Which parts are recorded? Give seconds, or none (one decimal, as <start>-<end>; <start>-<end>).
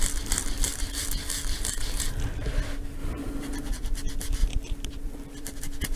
0.0-3.0; 3.7-4.4; 5.6-6.0